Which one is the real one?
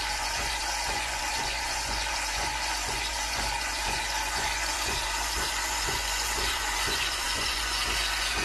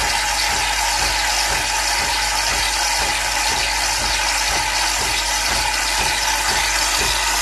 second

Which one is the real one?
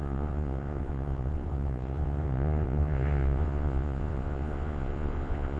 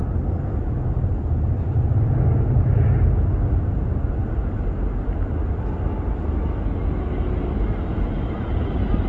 second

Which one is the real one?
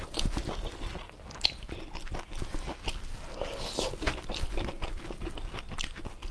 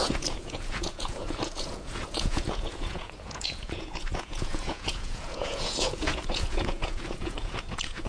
first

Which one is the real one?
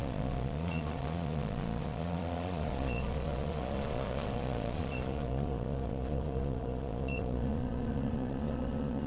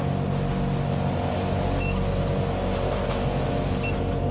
second